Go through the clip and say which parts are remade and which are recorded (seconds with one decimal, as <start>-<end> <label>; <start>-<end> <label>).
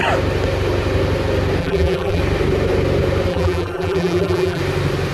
0.0-1.6 recorded; 1.6-2.2 remade; 2.2-3.3 recorded; 3.3-4.6 remade; 4.6-5.1 recorded